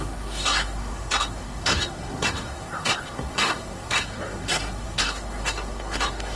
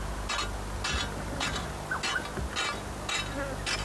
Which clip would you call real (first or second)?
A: second